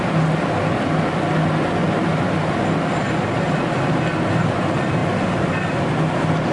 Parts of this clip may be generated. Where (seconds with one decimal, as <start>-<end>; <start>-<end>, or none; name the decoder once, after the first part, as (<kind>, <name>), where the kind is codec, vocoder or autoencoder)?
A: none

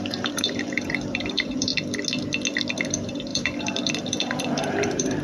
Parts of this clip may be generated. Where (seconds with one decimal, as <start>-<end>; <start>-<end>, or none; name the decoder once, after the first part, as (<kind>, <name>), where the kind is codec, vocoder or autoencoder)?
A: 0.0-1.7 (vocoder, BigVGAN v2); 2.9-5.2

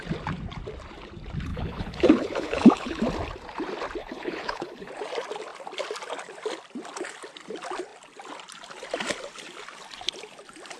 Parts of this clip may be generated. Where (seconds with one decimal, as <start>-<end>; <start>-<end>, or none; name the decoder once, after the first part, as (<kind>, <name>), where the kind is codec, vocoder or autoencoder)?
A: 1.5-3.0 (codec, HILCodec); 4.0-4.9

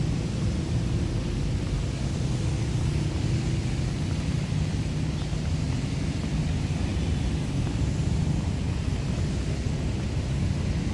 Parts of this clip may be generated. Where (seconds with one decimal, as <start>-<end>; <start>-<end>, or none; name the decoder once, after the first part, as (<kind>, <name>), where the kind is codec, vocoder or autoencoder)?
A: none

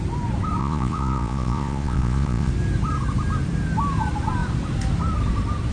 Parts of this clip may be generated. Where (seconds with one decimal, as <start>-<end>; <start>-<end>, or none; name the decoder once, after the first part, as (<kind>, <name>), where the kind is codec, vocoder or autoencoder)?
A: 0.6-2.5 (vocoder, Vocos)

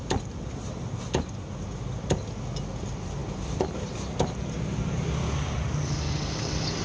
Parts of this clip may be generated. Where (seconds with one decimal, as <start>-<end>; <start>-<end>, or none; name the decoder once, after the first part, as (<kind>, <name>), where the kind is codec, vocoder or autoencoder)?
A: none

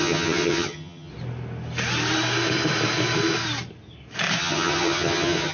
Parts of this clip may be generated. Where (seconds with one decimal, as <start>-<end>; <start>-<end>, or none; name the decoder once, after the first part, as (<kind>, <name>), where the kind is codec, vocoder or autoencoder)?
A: 0.0-1.1 (vocoder, HiFi-GAN); 4.4-5.5